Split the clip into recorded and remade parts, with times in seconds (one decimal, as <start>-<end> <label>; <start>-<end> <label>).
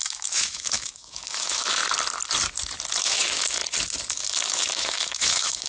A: 0.0-1.8 remade; 1.8-3.0 recorded; 3.0-3.6 remade; 3.6-4.1 recorded; 4.1-5.7 remade